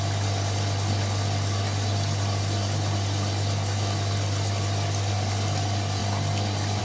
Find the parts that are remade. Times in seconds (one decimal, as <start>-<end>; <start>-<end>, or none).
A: none